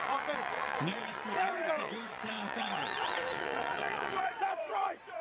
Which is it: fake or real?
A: fake